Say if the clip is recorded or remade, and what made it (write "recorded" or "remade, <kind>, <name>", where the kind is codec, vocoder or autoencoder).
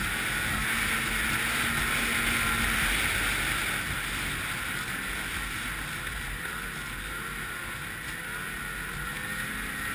recorded